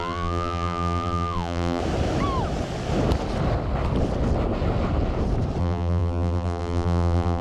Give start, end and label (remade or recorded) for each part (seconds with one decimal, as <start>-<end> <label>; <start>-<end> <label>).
0.0-1.8 remade; 1.8-5.6 recorded; 5.6-7.4 remade